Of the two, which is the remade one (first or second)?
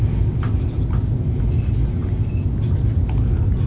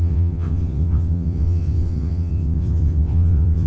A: second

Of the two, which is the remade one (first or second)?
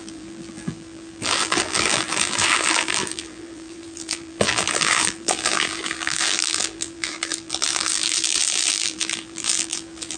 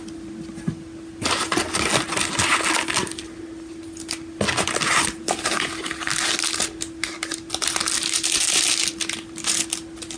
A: first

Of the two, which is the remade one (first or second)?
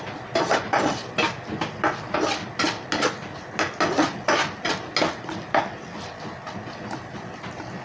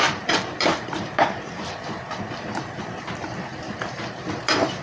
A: second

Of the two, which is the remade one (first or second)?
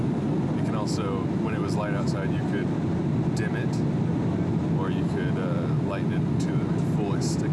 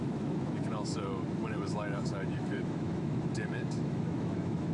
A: second